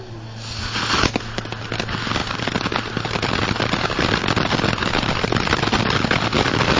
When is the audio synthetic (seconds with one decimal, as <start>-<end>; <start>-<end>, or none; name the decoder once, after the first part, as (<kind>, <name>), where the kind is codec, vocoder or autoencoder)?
2.2-2.9 (vocoder, BigVGAN v2)